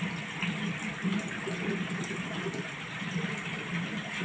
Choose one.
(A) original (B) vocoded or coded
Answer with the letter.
A